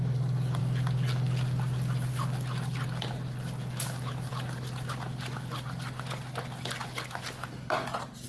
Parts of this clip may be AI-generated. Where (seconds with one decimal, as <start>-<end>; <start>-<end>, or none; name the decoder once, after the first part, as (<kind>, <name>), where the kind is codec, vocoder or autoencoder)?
none